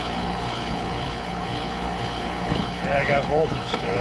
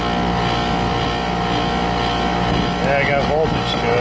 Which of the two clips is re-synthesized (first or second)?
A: first